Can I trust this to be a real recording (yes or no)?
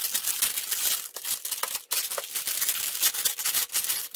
yes